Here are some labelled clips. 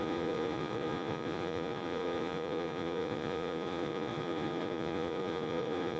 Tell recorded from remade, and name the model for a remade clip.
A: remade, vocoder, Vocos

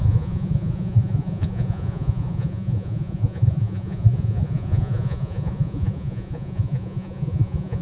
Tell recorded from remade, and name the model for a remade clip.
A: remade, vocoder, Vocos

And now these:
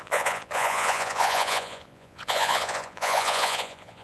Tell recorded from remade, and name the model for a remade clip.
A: remade, vocoder, Vocos